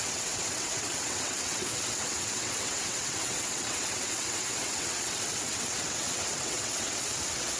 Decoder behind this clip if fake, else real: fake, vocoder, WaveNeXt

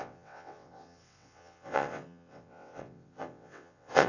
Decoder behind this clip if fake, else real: fake, vocoder, WaveNeXt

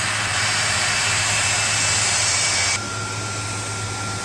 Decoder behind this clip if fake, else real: real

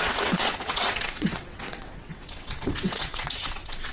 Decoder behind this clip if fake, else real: fake, vocoder, WaveNeXt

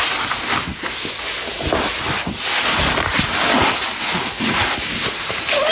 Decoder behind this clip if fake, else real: real